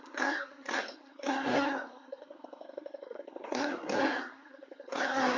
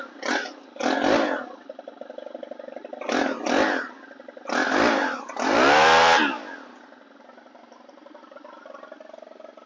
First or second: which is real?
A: second